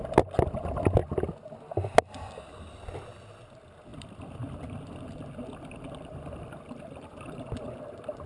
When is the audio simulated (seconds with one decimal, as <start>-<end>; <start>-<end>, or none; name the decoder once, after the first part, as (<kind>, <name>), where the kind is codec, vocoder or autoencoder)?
3.9-7.4 (vocoder, BigVGAN v2)